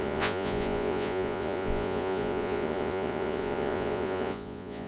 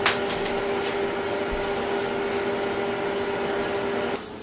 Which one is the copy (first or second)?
first